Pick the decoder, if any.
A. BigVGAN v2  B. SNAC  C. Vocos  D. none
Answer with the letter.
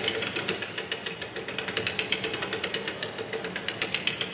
D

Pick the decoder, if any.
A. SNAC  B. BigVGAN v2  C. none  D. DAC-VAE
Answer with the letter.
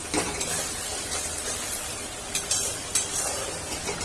B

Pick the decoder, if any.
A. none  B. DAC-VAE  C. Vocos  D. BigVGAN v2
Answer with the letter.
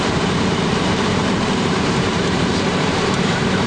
D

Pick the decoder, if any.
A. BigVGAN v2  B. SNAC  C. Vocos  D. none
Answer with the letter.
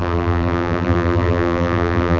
A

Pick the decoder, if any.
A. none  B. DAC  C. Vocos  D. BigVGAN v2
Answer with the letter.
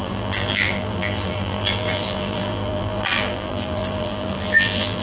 D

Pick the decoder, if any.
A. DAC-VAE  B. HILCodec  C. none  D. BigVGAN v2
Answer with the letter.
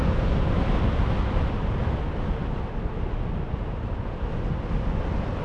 C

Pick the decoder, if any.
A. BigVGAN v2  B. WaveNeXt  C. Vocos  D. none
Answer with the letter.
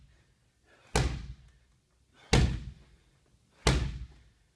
D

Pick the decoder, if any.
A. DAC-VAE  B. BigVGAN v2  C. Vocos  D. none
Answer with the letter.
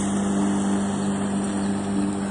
D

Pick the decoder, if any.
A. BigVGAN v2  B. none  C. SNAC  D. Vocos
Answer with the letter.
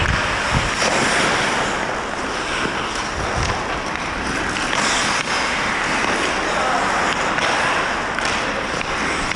B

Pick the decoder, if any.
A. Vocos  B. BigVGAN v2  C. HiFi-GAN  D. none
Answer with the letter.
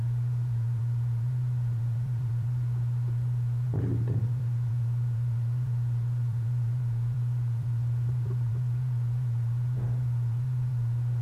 B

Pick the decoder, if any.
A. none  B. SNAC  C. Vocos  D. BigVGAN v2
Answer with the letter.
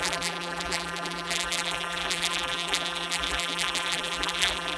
D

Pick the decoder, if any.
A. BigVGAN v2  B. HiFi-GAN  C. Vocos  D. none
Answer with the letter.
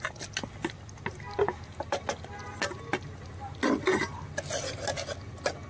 D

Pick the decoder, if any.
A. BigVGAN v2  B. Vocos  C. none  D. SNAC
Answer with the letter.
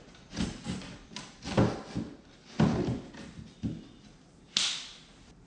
C